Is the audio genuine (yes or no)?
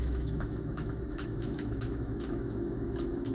no